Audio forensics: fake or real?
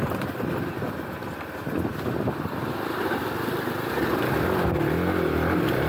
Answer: real